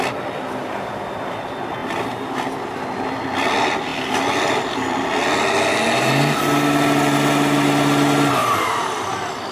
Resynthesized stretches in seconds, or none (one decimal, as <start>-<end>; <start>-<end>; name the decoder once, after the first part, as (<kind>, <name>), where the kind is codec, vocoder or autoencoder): 1.8-2.3 (vocoder, BigVGAN v2); 8.4-9.0